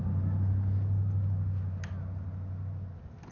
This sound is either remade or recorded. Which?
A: recorded